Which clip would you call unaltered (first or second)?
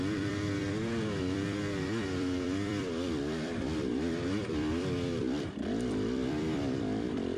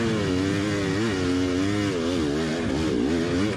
second